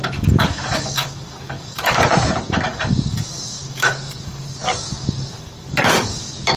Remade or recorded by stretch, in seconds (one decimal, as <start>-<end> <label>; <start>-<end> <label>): 0.0-6.6 remade